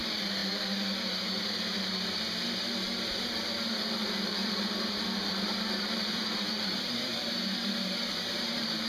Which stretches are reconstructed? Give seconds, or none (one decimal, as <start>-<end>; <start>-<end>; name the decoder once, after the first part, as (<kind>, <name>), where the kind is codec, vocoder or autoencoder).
4.0-8.9 (vocoder, BigVGAN v2)